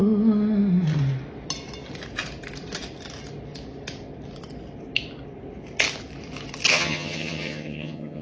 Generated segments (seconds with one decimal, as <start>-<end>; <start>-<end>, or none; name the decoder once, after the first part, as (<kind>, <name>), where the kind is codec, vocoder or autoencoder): 6.7-8.2 (vocoder, HiFi-GAN)